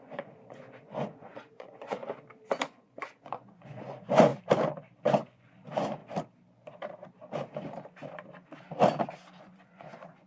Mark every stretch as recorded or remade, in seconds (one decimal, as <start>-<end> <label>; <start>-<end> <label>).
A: 0.0-2.0 remade; 2.0-2.6 recorded; 2.6-4.3 remade; 4.3-5.0 recorded; 5.0-6.0 remade; 6.0-9.4 recorded; 9.4-10.3 remade